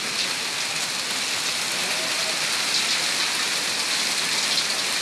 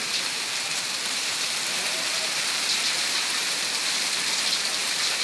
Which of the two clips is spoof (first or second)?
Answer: second